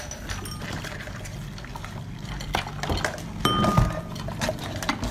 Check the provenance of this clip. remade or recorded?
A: recorded